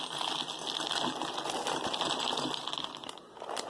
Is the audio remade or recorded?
recorded